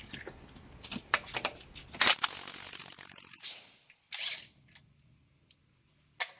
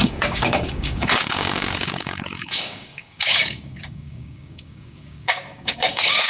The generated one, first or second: second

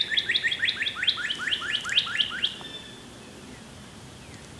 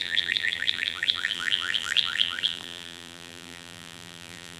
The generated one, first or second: second